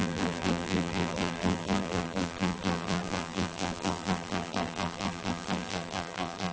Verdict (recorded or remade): remade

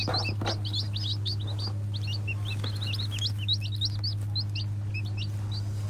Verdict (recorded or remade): recorded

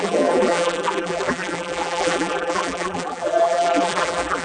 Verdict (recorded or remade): remade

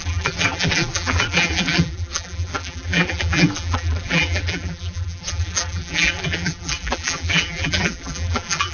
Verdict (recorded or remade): remade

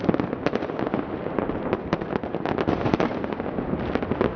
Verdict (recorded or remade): recorded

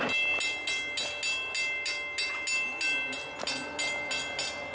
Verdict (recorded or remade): recorded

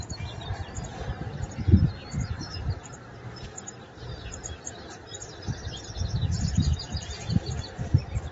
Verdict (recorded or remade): remade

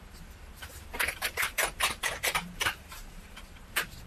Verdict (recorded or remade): remade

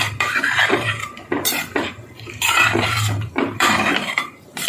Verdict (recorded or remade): remade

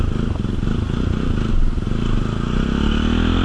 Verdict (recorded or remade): recorded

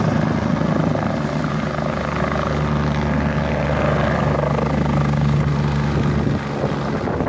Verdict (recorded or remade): recorded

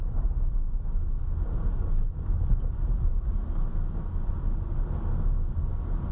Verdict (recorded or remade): recorded